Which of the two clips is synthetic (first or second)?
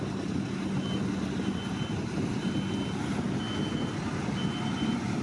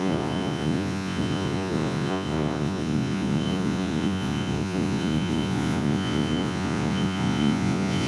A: second